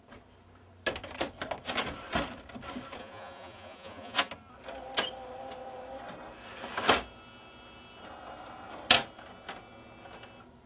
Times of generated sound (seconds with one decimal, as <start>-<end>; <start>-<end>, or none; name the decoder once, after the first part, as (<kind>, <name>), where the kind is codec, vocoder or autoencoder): 3.0-4.3 (vocoder, Vocos)